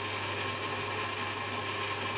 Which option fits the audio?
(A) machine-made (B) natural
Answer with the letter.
B